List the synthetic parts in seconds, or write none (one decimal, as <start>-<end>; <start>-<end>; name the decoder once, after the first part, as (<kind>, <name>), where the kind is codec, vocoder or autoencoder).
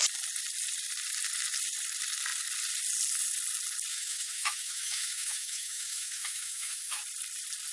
3.9-7.0 (autoencoder, DAC-VAE)